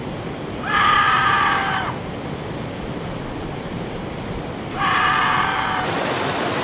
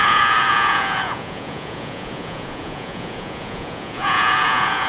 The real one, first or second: first